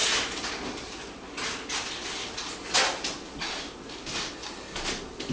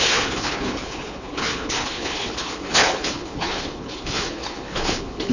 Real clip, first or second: first